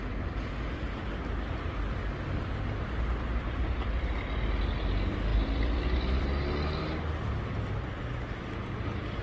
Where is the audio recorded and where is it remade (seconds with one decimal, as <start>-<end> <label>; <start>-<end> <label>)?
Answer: 0.0-9.2 recorded